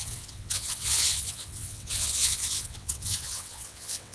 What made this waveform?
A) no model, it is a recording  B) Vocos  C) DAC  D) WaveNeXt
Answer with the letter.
D